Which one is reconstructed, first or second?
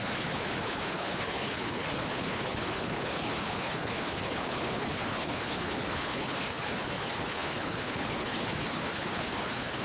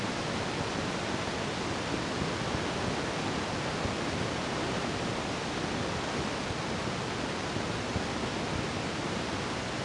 first